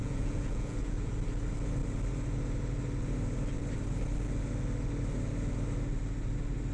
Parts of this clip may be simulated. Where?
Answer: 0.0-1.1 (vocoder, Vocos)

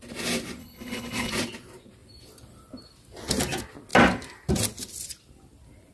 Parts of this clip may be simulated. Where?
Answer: 0.6-1.3 (codec, HILCodec)

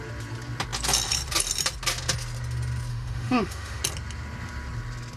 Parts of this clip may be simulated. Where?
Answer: 2.9-3.8 (autoencoder, DAC-VAE)

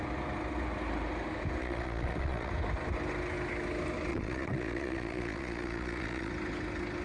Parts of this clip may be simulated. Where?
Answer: 1.6-2.5 (vocoder, Vocos); 4.1-6.3

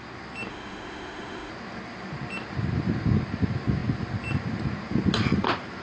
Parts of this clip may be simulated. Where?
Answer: 0.5-1.5 (autoencoder, DAC-VAE)